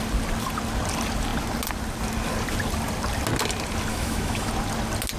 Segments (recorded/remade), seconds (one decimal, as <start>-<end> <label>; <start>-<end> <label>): 0.0-3.9 recorded; 3.9-4.5 remade; 4.5-5.2 recorded